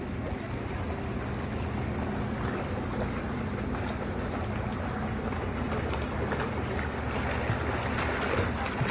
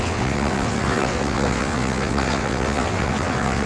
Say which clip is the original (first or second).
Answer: first